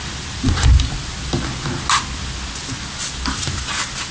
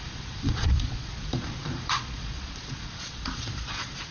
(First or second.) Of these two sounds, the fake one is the second